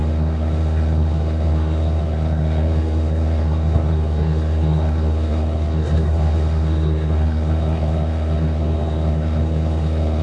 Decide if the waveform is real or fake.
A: fake